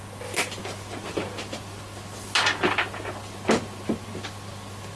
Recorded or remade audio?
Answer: recorded